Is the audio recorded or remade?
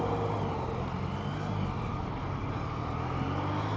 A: recorded